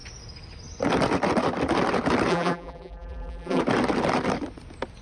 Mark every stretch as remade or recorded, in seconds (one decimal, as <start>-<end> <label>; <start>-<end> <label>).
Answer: 0.0-2.3 recorded; 2.3-3.6 remade; 3.6-5.0 recorded